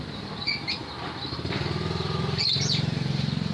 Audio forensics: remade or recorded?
remade